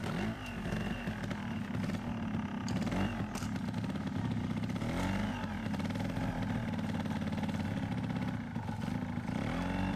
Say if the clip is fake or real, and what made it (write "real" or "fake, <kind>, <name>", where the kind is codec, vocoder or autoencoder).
real